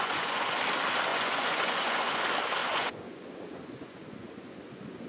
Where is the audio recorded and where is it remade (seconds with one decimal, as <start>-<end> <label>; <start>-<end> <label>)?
0.0-0.6 remade; 0.6-1.1 recorded; 1.1-2.2 remade; 2.2-2.6 recorded; 2.6-5.1 remade